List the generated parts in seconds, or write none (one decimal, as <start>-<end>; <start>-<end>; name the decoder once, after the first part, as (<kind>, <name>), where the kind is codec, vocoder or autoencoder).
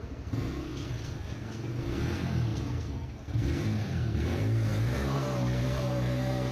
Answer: 0.0-6.5 (codec, SNAC)